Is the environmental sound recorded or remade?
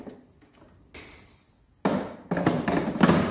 recorded